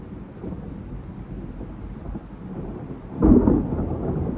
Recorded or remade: remade